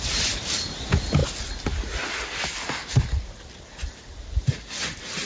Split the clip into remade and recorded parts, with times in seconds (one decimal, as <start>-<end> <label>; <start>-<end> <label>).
0.0-5.3 recorded